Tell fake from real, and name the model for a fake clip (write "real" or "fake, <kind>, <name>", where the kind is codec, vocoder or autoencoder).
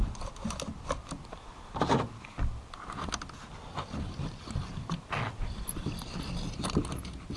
real